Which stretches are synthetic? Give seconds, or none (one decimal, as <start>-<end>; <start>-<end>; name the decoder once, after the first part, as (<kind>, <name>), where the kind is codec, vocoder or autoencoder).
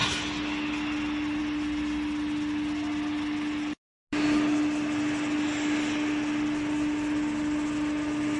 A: none